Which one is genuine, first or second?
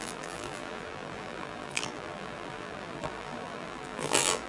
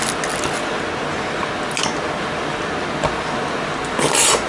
second